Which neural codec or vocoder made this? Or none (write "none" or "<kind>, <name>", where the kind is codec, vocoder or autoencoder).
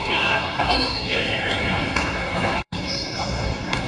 codec, SNAC